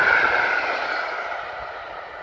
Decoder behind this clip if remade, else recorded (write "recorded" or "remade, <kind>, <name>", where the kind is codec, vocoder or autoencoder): recorded